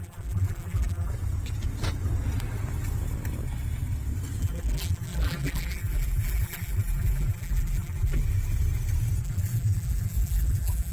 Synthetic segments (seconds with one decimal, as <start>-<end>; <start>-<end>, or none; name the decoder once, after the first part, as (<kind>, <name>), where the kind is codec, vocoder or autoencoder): 0.0-1.1 (vocoder, BigVGAN v2); 4.4-8.2; 9.2-10.9